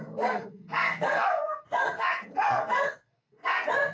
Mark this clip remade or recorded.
remade